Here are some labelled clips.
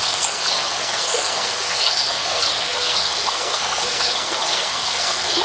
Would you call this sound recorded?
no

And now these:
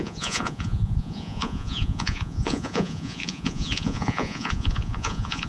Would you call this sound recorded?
no